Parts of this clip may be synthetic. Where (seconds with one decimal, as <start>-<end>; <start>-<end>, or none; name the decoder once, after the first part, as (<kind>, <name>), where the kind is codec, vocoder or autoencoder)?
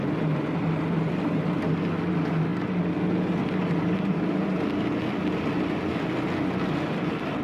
none